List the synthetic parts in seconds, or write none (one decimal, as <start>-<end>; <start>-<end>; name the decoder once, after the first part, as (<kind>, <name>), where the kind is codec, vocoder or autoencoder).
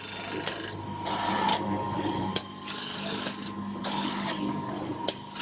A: 1.5-4.7 (codec, DAC)